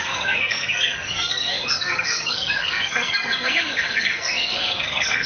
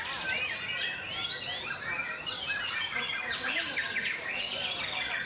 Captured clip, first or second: second